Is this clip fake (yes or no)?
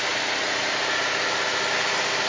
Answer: no